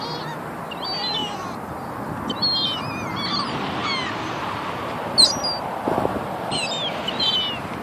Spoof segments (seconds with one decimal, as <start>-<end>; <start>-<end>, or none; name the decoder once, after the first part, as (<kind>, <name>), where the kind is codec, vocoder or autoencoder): none